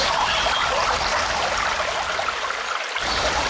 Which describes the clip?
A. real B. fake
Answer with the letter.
B